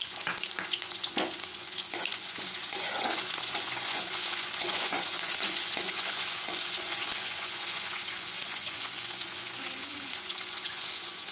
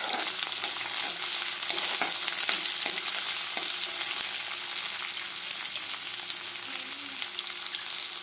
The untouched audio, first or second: second